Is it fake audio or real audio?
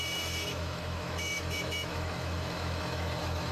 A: fake